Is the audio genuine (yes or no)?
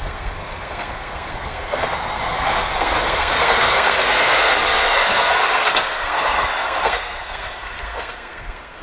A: no